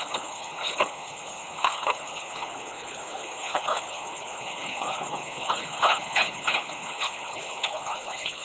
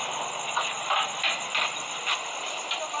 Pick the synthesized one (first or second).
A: first